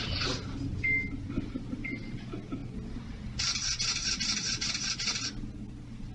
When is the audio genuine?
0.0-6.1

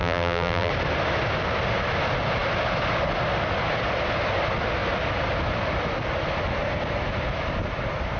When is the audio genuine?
0.7-8.2

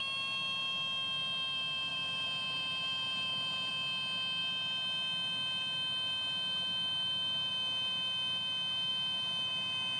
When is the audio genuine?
0.0-1.9; 3.7-10.0

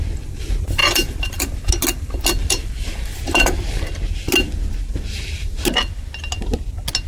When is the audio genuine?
0.0-0.8; 1.7-2.4; 3.6-7.1

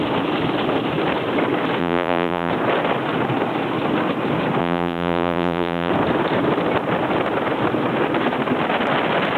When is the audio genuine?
0.0-1.8; 2.5-4.6; 5.9-9.4

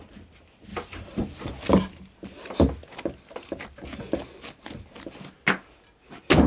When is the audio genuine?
0.0-0.7; 1.2-6.5

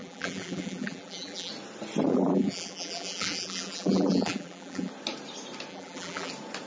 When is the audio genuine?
1.5-2.1; 4.9-5.7; 6.3-6.7

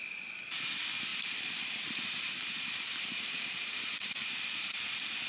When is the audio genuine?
0.0-1.1; 4.3-5.3